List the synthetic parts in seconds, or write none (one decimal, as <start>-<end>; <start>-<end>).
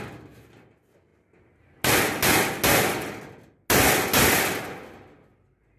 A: none